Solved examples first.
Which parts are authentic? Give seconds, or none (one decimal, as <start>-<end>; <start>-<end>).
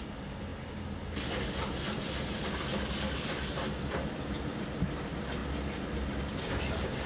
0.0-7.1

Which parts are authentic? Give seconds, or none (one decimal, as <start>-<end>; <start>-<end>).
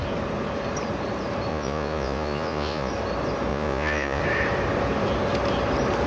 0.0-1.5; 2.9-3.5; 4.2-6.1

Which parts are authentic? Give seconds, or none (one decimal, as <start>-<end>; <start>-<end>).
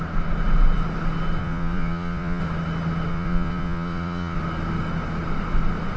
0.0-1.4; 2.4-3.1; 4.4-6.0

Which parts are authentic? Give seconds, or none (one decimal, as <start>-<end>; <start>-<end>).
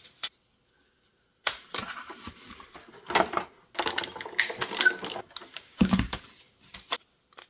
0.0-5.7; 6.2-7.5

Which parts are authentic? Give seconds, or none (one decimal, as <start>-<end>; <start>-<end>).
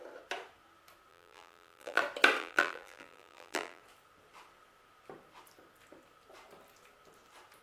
0.0-1.1; 2.0-2.4; 3.8-7.6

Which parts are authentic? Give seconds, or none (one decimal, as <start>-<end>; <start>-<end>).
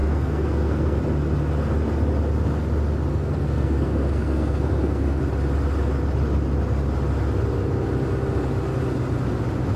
1.0-3.1; 5.2-9.8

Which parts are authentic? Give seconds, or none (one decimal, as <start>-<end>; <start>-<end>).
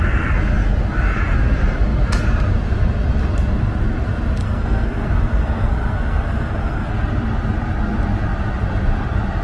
0.0-4.4; 6.9-9.4